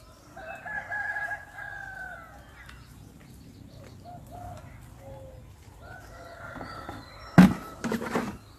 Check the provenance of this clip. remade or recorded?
recorded